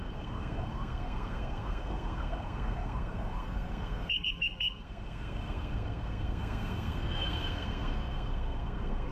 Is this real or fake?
fake